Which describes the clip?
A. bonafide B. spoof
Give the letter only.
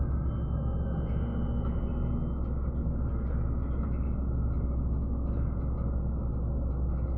A